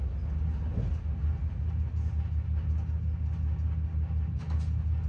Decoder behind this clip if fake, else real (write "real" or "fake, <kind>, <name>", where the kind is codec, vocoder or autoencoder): real